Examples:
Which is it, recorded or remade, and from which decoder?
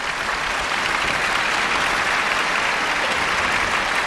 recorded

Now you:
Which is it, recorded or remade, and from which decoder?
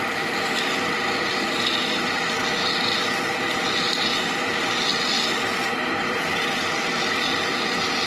recorded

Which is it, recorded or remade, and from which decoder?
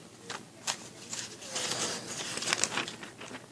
recorded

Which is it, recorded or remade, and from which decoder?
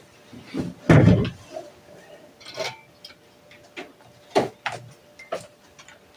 recorded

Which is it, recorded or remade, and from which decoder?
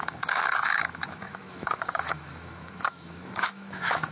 remade, autoencoder, DAC-VAE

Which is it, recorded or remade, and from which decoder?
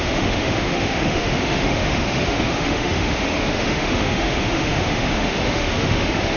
remade, autoencoder, DAC-VAE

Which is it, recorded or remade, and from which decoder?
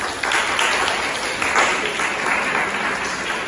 recorded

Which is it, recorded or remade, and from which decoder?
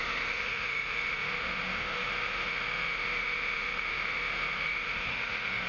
remade, autoencoder, DAC-VAE